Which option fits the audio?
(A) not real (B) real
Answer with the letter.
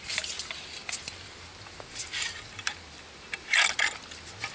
B